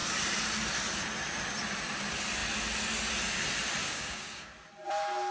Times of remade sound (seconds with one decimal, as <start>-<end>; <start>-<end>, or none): 3.8-4.5